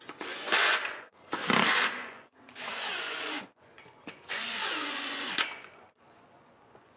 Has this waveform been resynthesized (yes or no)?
yes